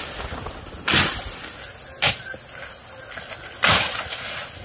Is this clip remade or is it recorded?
recorded